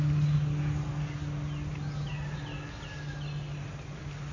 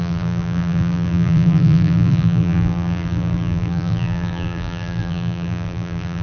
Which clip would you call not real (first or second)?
second